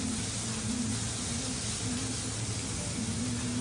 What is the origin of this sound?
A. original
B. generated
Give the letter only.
A